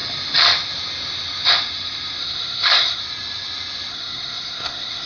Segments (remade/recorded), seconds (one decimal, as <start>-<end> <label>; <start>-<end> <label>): 0.0-2.2 recorded; 2.2-3.0 remade; 3.0-3.9 recorded; 3.9-5.1 remade